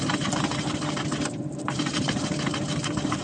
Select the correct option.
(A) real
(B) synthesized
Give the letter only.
B